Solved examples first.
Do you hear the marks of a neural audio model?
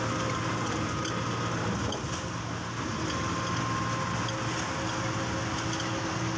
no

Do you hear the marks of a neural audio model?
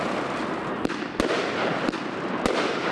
no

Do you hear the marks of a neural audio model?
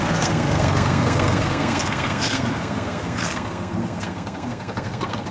yes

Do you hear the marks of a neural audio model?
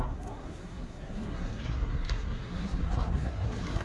yes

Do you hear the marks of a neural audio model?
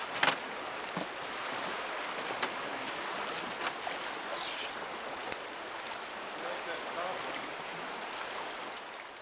no